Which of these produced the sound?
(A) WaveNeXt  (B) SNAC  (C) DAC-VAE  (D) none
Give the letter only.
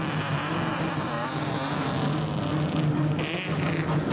D